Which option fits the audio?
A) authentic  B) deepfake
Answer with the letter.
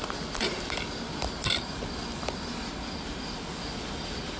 A